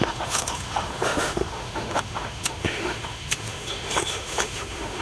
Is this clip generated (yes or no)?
yes